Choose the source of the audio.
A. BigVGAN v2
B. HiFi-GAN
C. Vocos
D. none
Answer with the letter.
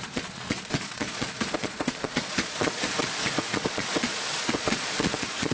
C